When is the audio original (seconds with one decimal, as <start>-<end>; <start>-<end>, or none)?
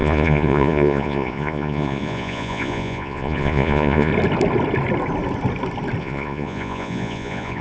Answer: 4.1-6.0